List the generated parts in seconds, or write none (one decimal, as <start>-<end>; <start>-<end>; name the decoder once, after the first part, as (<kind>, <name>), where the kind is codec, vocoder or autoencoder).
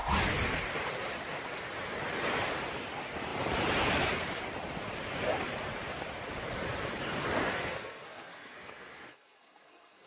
7.5-10.1 (codec, SNAC)